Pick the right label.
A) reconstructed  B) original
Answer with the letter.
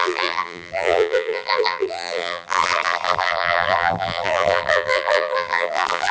A